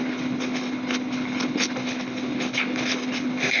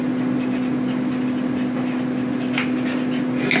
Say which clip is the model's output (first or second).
first